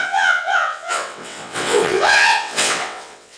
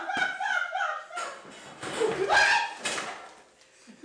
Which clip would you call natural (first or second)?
second